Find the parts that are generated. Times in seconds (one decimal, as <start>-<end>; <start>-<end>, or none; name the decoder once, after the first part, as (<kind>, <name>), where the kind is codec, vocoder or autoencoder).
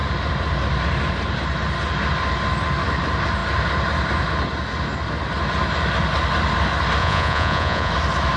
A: 7.0-7.9 (vocoder, Vocos)